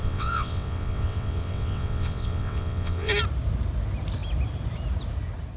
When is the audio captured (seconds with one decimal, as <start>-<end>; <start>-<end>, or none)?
3.1-5.6